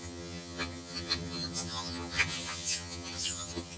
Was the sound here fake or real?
fake